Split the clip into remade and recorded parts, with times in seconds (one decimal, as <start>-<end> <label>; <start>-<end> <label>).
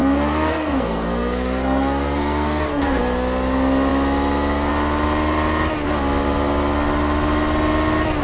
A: 0.0-3.0 remade; 3.0-8.2 recorded